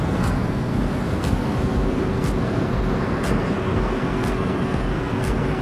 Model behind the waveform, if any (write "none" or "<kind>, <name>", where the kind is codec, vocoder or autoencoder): codec, SNAC